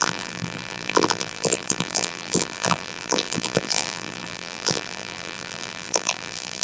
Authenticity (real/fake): fake